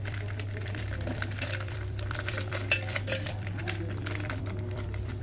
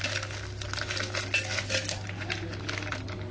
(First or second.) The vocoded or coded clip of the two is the first